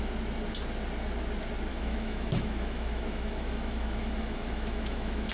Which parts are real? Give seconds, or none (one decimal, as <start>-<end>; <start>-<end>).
0.0-1.7